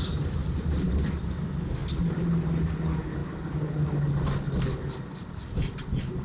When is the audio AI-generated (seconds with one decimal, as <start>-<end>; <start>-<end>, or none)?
0.4-1.3; 1.8-2.3